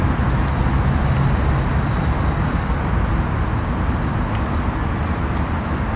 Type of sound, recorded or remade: recorded